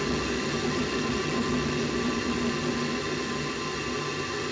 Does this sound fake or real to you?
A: real